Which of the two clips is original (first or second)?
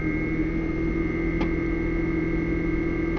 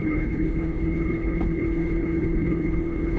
first